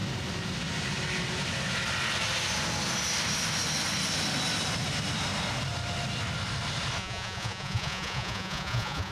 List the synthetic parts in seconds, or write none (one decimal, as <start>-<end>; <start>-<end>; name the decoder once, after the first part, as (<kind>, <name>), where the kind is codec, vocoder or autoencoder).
7.0-9.1 (vocoder, Vocos)